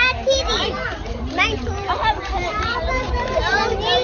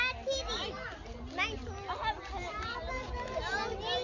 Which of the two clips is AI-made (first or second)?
first